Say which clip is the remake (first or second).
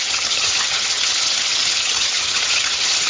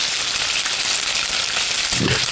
first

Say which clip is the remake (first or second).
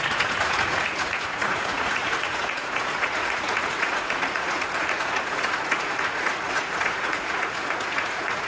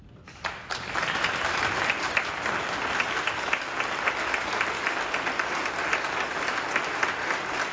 first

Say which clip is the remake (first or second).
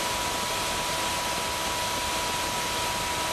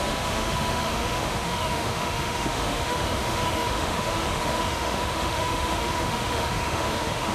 second